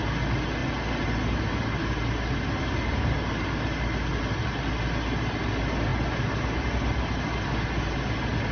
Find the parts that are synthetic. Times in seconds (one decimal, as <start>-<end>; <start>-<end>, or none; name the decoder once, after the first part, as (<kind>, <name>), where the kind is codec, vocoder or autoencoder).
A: none